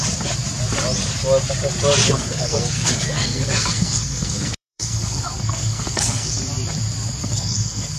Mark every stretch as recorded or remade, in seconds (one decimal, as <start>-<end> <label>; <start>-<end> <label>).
0.0-2.0 recorded; 2.0-6.4 remade; 6.4-7.2 recorded; 7.2-8.0 remade